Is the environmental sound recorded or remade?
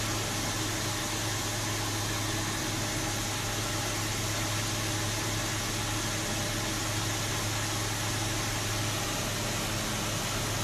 recorded